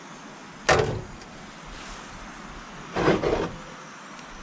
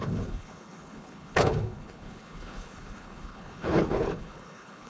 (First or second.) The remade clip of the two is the second